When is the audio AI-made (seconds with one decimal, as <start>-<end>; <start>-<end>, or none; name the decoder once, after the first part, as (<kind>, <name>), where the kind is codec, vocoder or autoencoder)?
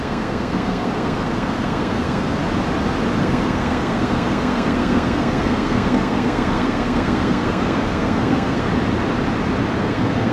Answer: 0.0-2.4 (codec, SNAC); 3.2-8.7; 9.8-10.3